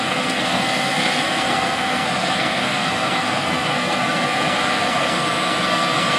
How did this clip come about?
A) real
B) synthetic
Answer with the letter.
B